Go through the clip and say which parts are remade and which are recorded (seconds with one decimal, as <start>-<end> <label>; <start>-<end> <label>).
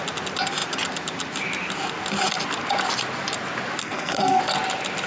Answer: 0.0-3.8 recorded; 3.8-4.4 remade; 4.4-5.1 recorded